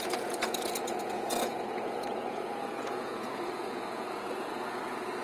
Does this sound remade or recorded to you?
remade